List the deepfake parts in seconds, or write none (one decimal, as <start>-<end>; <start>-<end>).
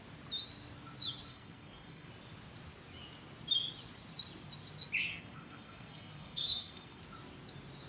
1.3-2.1; 5.1-7.0